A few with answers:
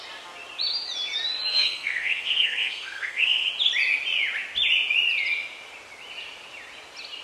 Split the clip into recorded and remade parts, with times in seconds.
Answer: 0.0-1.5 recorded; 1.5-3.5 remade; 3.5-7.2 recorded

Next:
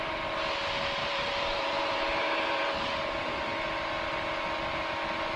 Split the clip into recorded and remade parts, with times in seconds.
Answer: 0.0-1.0 recorded; 1.0-2.7 remade; 2.7-5.4 recorded

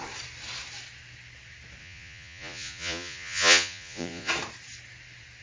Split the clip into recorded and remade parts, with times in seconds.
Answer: 0.0-1.8 recorded; 1.8-4.3 remade; 4.3-5.4 recorded